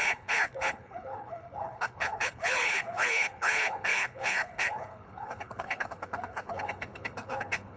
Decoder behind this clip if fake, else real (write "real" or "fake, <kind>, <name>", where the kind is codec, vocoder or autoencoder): fake, codec, HILCodec